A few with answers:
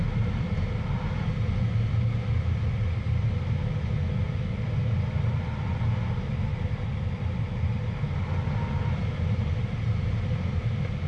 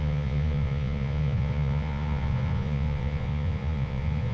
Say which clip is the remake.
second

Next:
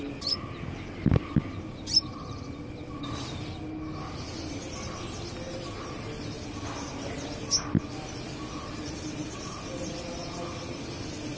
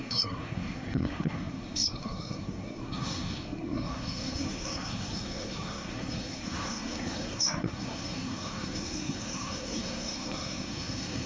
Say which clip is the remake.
second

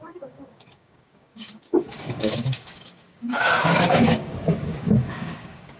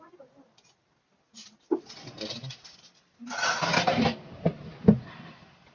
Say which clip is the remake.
first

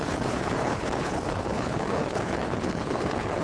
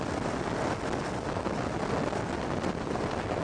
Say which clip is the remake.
first